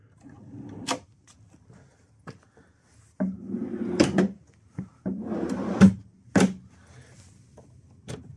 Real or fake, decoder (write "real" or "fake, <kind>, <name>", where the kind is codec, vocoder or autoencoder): real